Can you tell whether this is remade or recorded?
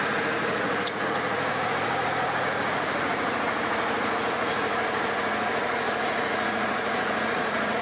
remade